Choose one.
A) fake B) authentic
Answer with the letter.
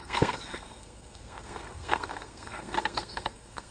A